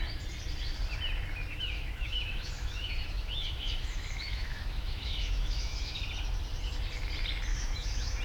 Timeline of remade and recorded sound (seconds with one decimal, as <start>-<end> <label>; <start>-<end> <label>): 0.0-1.5 recorded; 1.5-6.0 remade; 6.0-7.5 recorded; 7.5-8.2 remade